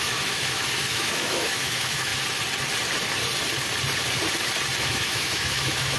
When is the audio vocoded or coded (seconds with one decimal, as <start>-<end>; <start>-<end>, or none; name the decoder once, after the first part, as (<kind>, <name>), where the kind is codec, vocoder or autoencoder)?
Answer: 0.0-2.1 (autoencoder, DAC-VAE); 4.8-6.0